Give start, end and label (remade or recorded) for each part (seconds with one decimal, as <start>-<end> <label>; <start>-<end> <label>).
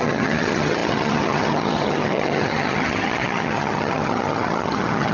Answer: 0.0-5.1 remade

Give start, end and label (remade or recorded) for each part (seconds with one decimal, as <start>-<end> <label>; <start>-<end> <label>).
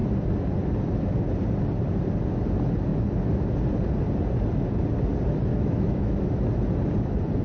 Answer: 0.0-5.5 recorded; 5.5-6.2 remade; 6.2-7.4 recorded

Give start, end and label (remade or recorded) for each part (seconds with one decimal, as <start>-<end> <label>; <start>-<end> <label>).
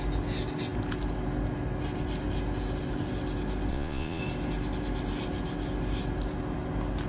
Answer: 0.0-3.7 recorded; 3.7-4.2 remade; 4.2-7.1 recorded